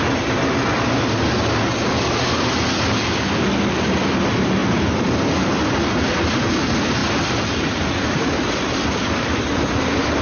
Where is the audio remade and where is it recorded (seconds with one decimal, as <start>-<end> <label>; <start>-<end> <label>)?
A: 0.0-4.6 recorded; 4.6-5.1 remade; 5.1-7.0 recorded; 7.0-9.3 remade; 9.3-10.2 recorded

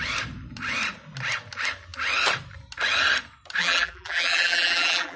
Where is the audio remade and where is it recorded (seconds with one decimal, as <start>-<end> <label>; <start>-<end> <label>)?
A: 0.0-3.6 recorded; 3.6-5.2 remade

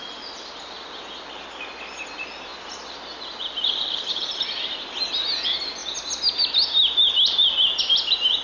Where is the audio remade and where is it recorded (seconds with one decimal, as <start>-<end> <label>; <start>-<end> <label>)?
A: 0.0-2.5 recorded; 2.5-4.7 remade; 4.7-8.4 recorded

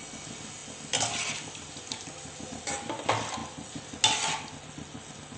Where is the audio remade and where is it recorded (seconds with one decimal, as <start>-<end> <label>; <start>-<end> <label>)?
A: 0.0-5.4 recorded

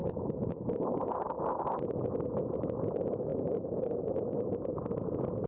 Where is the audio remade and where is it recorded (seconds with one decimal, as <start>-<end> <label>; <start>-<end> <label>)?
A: 0.0-1.1 remade; 1.1-3.3 recorded; 3.3-4.0 remade; 4.0-5.5 recorded

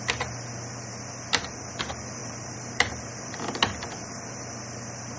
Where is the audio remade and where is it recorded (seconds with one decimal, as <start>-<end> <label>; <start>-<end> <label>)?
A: 0.0-2.2 recorded; 2.2-3.3 remade; 3.3-5.2 recorded